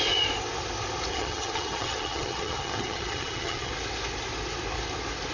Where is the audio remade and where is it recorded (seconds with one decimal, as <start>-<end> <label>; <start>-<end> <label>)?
0.0-1.1 recorded; 1.1-3.7 remade; 3.7-5.3 recorded